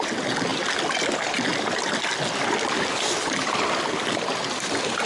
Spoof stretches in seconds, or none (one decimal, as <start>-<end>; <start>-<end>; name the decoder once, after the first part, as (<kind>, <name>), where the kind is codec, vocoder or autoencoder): none